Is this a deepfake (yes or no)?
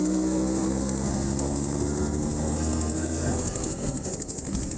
yes